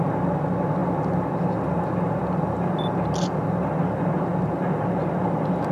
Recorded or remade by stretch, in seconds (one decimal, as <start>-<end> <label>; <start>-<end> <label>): 0.0-5.7 recorded